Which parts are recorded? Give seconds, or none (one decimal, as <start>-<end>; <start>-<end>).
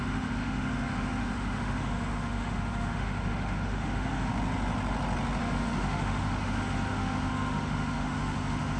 4.3-5.4